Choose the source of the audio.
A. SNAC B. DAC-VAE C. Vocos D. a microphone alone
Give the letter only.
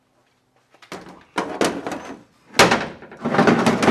D